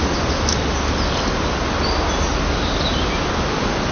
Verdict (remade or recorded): recorded